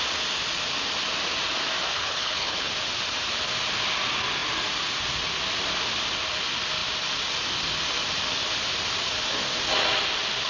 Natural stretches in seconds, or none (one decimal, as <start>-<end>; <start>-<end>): 0.0-1.9; 2.7-10.5